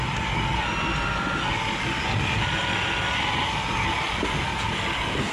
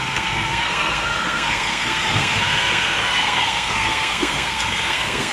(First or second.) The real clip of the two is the first